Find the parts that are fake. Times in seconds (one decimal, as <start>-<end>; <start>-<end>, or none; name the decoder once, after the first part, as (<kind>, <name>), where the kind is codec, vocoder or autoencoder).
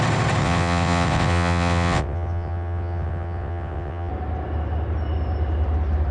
0.4-4.1 (vocoder, WaveNeXt)